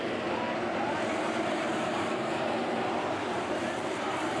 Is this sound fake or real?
fake